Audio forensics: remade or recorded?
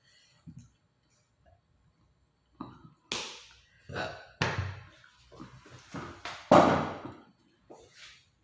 recorded